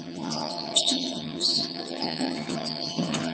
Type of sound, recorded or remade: remade